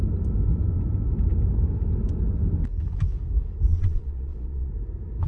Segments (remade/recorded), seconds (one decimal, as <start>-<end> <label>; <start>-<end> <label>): 0.0-3.7 recorded; 3.7-4.7 remade; 4.7-5.3 recorded